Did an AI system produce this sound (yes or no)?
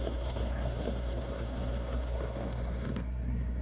yes